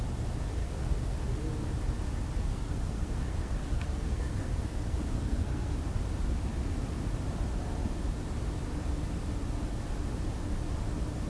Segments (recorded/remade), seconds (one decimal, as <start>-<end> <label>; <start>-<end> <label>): 0.0-0.6 recorded; 0.6-1.2 remade; 1.2-2.5 recorded; 2.5-5.8 remade; 5.8-11.3 recorded

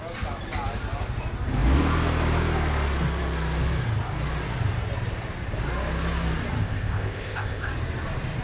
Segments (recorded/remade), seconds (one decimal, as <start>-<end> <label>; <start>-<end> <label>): 0.0-6.6 recorded; 6.6-7.7 remade; 7.7-8.4 recorded

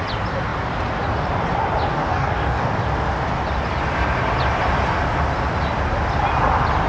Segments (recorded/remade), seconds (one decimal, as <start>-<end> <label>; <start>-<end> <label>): 0.0-1.9 recorded; 1.9-2.7 remade; 2.7-6.9 recorded

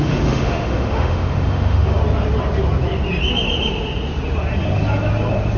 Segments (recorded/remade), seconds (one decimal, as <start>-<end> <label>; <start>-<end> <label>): 0.0-2.0 remade; 2.0-5.6 recorded

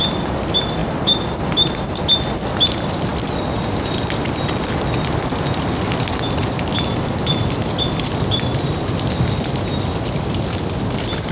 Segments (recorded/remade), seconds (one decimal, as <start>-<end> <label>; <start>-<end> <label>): 0.0-11.3 recorded

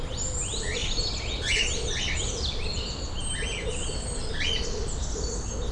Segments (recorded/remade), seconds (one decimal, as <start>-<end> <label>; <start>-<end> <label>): 0.0-0.8 recorded; 0.8-1.6 remade; 1.6-5.7 recorded